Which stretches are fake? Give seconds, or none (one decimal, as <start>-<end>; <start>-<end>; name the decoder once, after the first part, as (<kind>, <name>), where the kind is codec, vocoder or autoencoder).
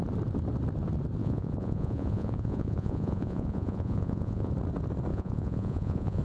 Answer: 1.2-4.5 (vocoder, Vocos); 5.1-6.2